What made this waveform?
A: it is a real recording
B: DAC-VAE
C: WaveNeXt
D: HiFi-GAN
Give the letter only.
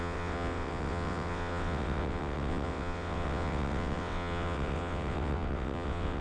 C